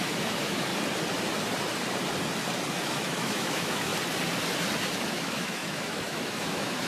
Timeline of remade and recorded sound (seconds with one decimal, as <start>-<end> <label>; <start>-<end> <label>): 0.0-0.7 remade; 0.7-2.7 recorded; 2.7-3.9 remade; 3.9-5.0 recorded; 5.0-6.9 remade